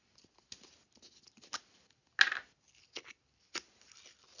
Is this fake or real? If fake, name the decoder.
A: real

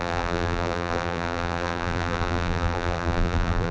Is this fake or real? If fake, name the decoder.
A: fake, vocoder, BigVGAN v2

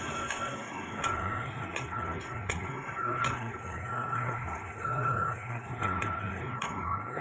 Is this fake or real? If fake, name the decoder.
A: fake, codec, SNAC